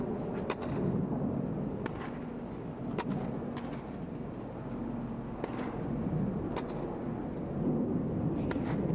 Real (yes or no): yes